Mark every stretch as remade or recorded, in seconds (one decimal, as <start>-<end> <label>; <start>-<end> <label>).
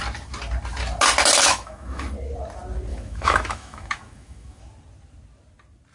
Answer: 0.0-1.4 recorded; 1.4-2.1 remade; 2.1-2.9 recorded; 2.9-4.6 remade; 4.6-5.9 recorded